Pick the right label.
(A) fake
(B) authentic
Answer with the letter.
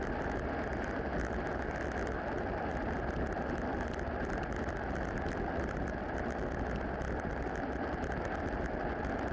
B